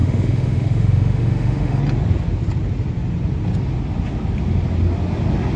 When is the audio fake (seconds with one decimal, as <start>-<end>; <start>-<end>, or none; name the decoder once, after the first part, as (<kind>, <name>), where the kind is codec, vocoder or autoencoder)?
0.0-1.8 (autoencoder, DAC-VAE)